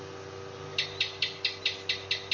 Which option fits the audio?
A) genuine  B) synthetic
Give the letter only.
A